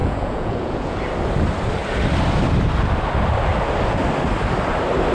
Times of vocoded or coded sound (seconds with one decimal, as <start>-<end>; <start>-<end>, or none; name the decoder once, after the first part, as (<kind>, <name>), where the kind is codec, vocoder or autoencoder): 0.0-1.0 (vocoder, Vocos)